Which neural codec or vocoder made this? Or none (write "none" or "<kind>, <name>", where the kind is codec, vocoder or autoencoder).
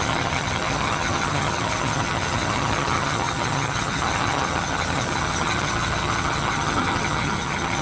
vocoder, HiFi-GAN